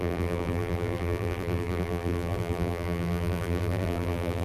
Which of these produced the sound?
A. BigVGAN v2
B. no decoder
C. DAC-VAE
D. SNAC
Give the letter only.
A